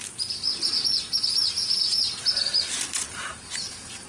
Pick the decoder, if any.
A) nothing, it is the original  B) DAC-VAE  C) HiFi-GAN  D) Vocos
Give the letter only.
A